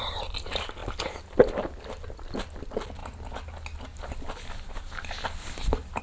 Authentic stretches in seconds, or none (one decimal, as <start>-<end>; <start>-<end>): 0.0-6.0